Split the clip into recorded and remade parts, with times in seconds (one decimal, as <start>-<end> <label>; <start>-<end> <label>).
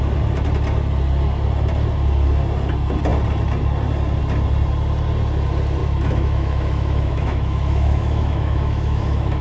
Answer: 0.0-5.8 recorded; 5.8-9.4 remade